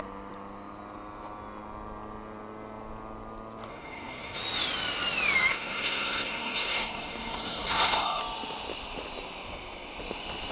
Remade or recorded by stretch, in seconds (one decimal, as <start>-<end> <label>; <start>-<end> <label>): 0.0-3.7 recorded; 3.7-4.4 remade; 4.4-5.5 recorded; 5.5-8.2 remade; 8.2-10.5 recorded

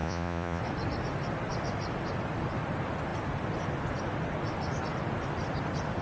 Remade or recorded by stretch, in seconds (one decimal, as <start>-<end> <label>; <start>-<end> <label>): 0.0-0.6 remade; 0.6-6.0 recorded

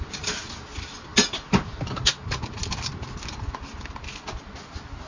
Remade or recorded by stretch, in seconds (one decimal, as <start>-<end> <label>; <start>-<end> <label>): 0.0-5.1 recorded

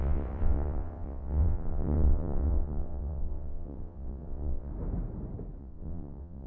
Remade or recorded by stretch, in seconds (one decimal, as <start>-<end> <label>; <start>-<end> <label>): 0.0-4.7 remade; 4.7-5.6 recorded; 5.6-6.5 remade

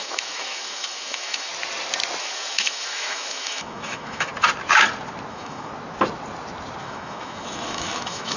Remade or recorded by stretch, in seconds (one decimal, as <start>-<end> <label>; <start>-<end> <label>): 0.0-1.5 remade; 1.5-2.2 recorded; 2.2-4.3 remade; 4.3-5.3 recorded; 5.3-5.7 remade; 5.7-6.8 recorded; 6.8-8.4 remade

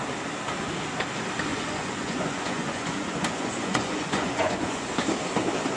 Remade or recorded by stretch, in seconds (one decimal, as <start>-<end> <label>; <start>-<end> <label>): 0.0-1.5 recorded; 1.5-4.9 remade; 4.9-5.8 recorded

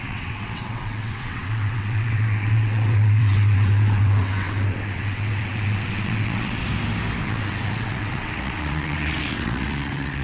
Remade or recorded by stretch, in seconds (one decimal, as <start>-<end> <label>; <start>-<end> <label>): 0.0-6.6 remade; 6.6-7.2 recorded; 7.2-10.2 remade